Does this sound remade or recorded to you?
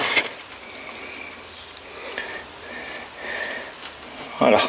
recorded